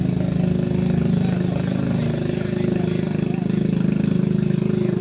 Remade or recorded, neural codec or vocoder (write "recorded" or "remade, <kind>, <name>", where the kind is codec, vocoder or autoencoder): recorded